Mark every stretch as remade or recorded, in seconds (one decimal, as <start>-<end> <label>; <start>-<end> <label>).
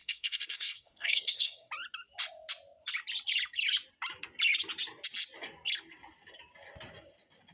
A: 0.0-1.7 remade; 1.7-7.5 recorded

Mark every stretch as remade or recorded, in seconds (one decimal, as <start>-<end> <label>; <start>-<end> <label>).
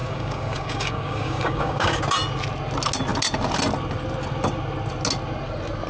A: 0.0-2.0 remade; 2.0-5.9 recorded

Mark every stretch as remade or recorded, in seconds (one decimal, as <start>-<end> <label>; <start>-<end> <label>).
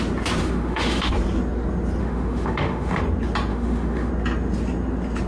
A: 0.0-0.4 recorded; 0.4-1.1 remade; 1.1-2.0 recorded; 2.0-3.0 remade; 3.0-3.5 recorded; 3.5-4.1 remade; 4.1-5.3 recorded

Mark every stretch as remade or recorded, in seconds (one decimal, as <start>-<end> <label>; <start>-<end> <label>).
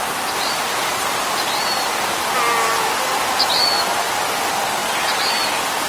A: 0.0-5.9 recorded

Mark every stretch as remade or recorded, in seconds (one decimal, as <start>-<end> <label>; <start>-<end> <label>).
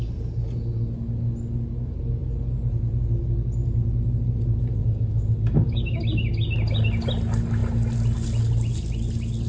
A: 0.0-4.8 recorded; 4.8-6.0 remade; 6.0-9.5 recorded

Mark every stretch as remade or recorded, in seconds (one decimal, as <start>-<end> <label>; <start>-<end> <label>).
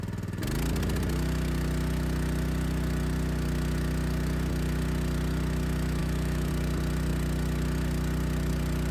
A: 0.0-6.0 recorded; 6.0-6.5 remade; 6.5-8.9 recorded